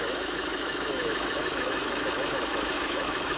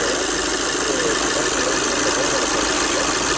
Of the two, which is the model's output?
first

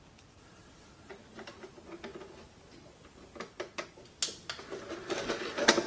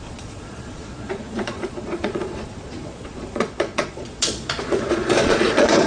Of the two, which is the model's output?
second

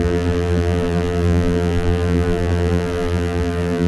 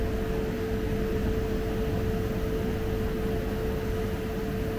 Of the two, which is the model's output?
first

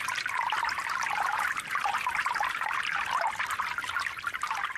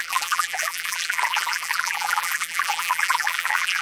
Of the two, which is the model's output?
second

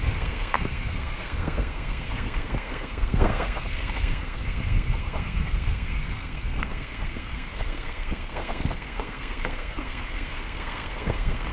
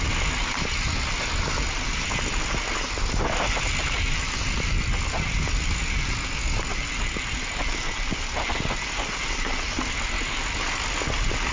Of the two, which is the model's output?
first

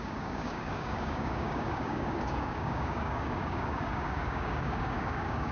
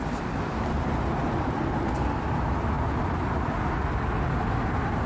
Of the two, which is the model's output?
first